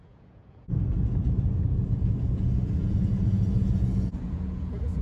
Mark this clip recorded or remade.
remade